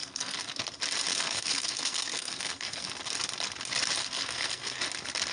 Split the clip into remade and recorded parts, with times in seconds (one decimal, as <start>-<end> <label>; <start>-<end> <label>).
0.0-0.5 remade; 0.5-1.1 recorded; 1.1-2.9 remade; 2.9-4.0 recorded; 4.0-4.8 remade; 4.8-5.3 recorded